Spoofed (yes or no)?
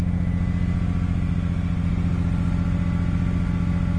no